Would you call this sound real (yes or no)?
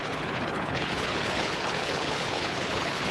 no